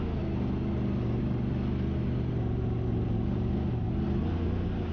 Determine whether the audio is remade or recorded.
recorded